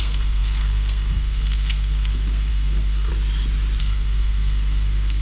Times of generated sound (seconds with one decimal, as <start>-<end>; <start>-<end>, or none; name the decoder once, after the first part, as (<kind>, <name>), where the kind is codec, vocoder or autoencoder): 0.0-3.1 (codec, SNAC); 3.8-5.2